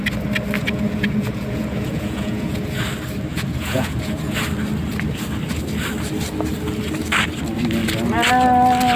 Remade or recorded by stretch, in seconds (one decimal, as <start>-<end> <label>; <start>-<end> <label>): 0.0-0.6 recorded; 0.6-2.8 remade; 2.8-3.3 recorded; 3.3-4.4 remade; 4.4-9.0 recorded